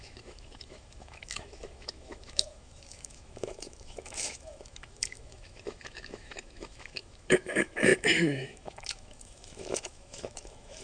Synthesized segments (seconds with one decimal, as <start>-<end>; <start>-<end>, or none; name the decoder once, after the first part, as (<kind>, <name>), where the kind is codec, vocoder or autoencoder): 0.0-10.8 (autoencoder, DAC-VAE)